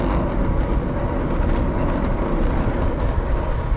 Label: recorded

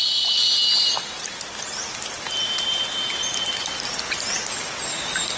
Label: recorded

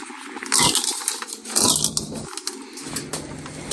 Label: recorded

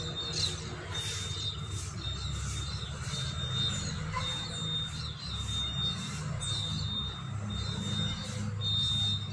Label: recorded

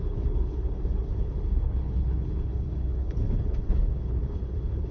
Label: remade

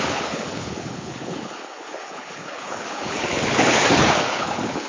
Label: remade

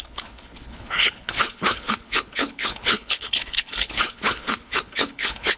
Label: remade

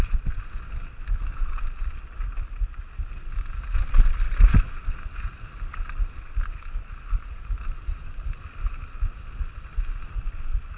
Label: recorded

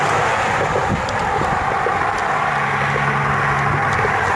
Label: recorded